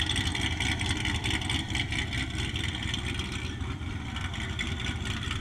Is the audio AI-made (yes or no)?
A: yes